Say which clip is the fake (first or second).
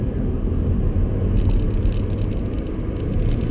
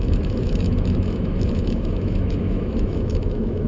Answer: second